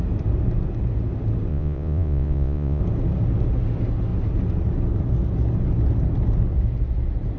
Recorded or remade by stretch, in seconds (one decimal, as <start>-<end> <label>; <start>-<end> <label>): 0.0-1.5 recorded; 1.5-2.8 remade; 2.8-7.4 recorded